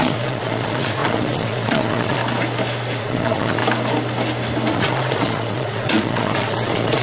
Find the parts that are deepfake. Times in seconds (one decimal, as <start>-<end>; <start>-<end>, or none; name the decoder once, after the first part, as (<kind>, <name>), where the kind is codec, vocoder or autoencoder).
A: 0.0-2.2 (vocoder, Vocos); 3.0-3.6; 4.7-7.0